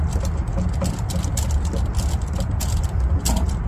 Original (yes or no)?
yes